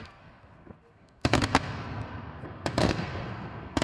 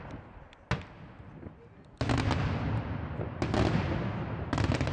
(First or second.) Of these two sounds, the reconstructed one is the first